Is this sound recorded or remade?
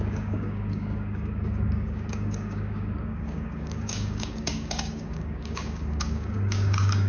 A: remade